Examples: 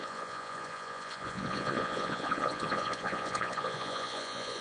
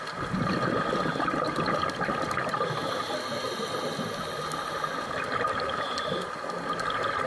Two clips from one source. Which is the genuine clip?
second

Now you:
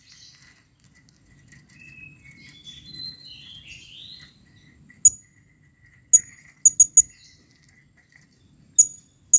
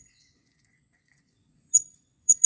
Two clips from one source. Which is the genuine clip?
first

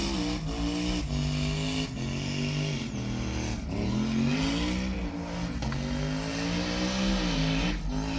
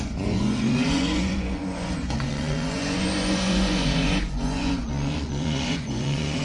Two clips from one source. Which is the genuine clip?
first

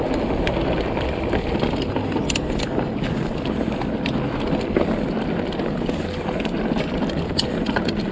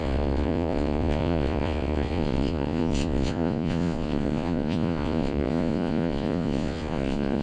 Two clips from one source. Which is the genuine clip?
first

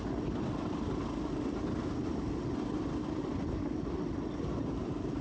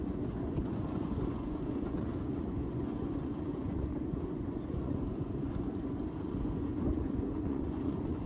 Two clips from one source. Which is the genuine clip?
first